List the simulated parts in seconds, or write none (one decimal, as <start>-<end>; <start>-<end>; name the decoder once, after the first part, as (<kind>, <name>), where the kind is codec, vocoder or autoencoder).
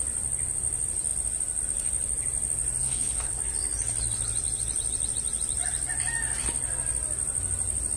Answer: 2.8-3.4 (codec, HILCodec)